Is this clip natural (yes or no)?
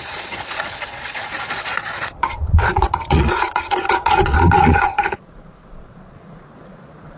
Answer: no